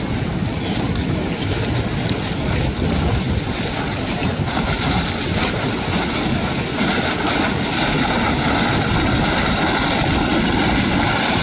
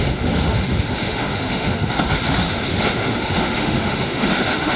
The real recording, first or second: first